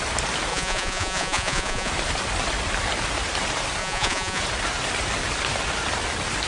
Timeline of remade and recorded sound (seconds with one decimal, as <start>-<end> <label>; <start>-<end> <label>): 0.0-0.5 recorded; 0.5-1.9 remade; 1.9-3.8 recorded; 3.8-4.4 remade; 4.4-6.5 recorded